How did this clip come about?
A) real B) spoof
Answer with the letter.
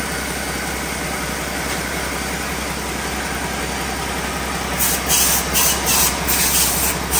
A